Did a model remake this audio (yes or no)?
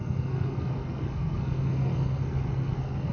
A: yes